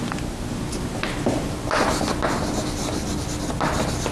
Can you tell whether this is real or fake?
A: real